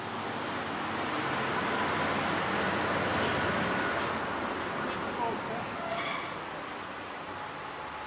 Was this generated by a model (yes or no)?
no